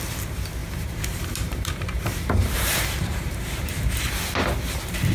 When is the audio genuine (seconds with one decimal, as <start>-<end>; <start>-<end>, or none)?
0.0-0.6; 3.7-5.1